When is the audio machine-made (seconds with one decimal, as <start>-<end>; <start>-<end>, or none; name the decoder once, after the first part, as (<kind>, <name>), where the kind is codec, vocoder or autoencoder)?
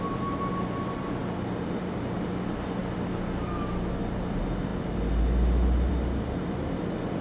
none